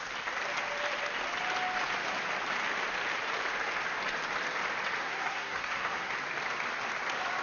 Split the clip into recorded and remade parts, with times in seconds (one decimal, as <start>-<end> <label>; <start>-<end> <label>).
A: 0.0-5.0 recorded; 5.0-6.1 remade; 6.1-7.4 recorded